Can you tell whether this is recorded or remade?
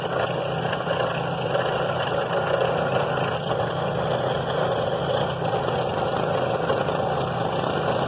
remade